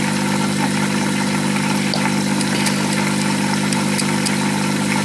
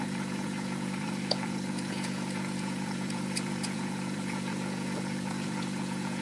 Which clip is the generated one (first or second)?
second